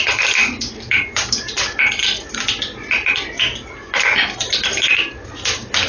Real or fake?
real